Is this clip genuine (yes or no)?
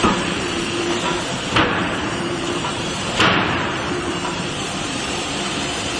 no